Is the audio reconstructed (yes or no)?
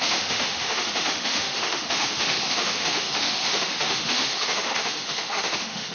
yes